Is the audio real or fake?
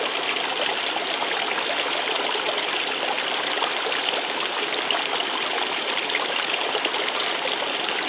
real